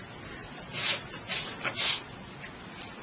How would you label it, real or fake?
real